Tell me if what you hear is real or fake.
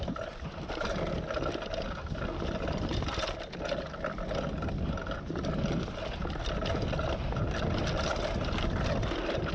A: real